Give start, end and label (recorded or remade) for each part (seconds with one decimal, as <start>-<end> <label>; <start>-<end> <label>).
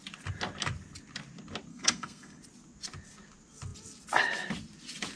0.0-1.7 recorded; 1.7-2.4 remade; 2.4-5.2 recorded